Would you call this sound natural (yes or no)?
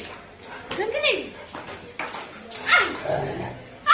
yes